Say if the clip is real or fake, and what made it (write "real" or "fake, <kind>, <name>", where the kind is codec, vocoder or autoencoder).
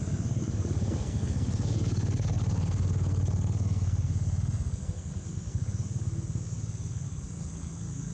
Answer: fake, codec, SNAC